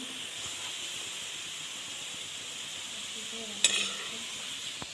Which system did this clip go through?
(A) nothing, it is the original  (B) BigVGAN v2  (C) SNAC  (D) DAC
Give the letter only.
A